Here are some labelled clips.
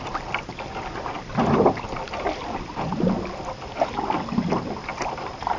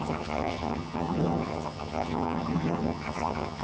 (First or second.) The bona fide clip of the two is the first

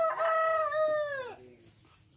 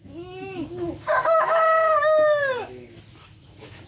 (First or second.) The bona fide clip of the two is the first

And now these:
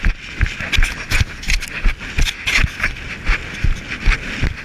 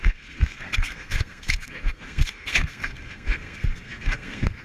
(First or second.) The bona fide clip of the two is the first